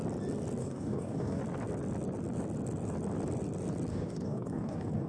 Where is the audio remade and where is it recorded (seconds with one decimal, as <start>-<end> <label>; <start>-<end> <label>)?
0.0-0.6 recorded; 0.6-1.4 remade; 1.4-3.9 recorded; 3.9-5.1 remade